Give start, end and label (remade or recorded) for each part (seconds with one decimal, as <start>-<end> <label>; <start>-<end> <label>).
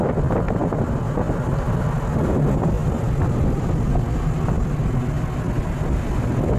0.0-6.6 recorded